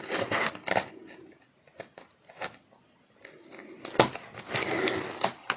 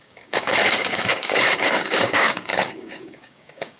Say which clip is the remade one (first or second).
second